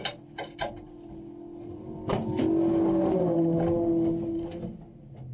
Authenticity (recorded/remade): recorded